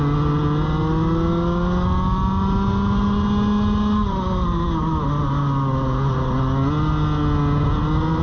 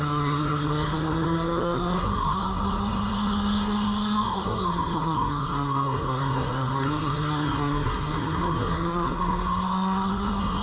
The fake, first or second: second